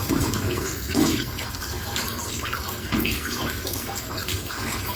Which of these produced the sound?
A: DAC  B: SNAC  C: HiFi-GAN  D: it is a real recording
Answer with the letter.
B